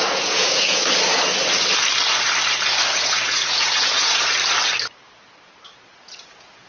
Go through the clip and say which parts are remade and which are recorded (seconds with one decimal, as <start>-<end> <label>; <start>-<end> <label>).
0.0-0.8 remade; 0.8-2.9 recorded; 2.9-4.2 remade; 4.2-6.0 recorded; 6.0-6.7 remade